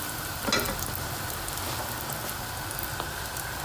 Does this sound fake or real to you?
real